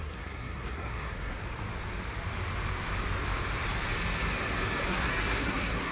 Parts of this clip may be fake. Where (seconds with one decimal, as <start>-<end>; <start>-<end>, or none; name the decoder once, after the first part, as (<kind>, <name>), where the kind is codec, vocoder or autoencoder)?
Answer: 0.0-1.4 (codec, SNAC); 4.9-5.9